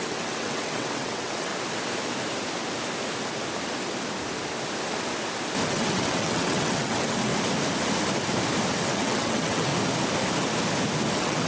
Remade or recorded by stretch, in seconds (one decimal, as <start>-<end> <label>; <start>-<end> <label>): 0.0-1.5 remade; 1.5-5.7 recorded; 5.7-7.3 remade; 7.3-8.7 recorded; 8.7-9.7 remade; 9.7-11.1 recorded; 11.1-11.5 remade